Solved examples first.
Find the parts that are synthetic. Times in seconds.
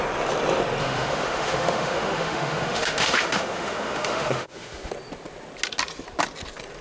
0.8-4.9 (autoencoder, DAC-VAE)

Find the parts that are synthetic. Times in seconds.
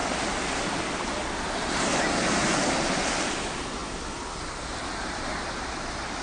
none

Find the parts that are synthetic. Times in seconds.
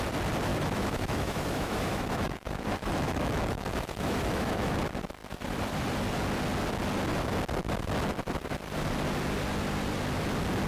0.5-4.8 (autoencoder, DAC-VAE)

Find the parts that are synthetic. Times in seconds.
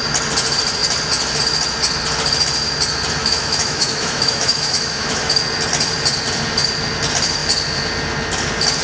3.2-5.4 (autoencoder, DAC-VAE)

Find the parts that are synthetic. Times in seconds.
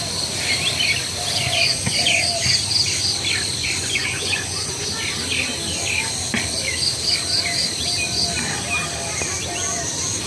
1.4-2.2 (vocoder, Vocos); 3.6-4.9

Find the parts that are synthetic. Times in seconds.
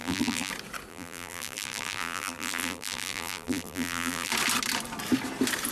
0.0-0.5 (vocoder, BigVGAN v2); 0.9-4.3